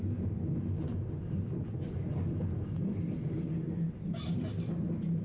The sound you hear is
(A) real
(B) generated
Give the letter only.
A